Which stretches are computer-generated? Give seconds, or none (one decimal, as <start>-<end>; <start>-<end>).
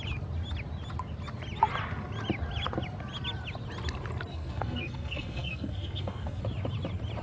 4.3-6.4